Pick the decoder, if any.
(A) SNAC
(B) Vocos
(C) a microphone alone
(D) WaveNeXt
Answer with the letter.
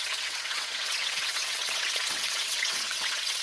D